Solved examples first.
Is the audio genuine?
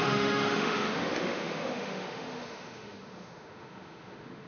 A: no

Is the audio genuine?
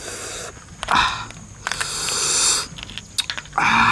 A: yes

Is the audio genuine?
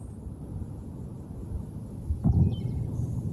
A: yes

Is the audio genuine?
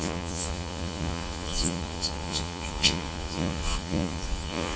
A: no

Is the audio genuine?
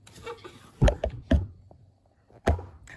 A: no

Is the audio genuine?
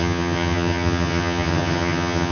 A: no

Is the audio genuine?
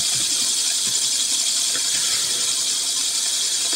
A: yes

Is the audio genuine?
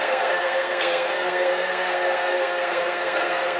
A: no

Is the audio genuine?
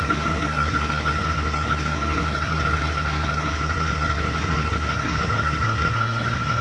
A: no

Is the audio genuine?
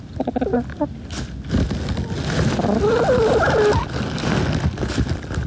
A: yes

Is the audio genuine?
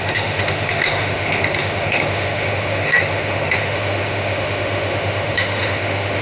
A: no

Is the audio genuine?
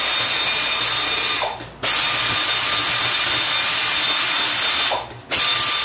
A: yes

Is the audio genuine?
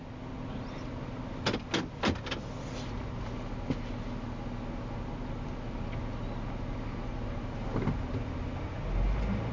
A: yes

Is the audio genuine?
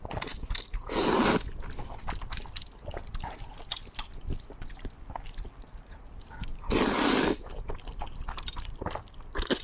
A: yes